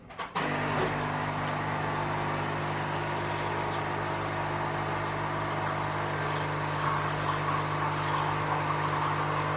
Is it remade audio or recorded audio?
recorded